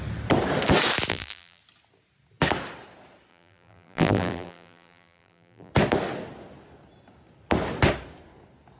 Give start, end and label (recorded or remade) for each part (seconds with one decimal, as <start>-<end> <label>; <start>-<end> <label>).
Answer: 0.0-1.1 recorded; 1.1-1.6 remade; 1.6-3.3 recorded; 3.3-5.7 remade; 5.7-8.8 recorded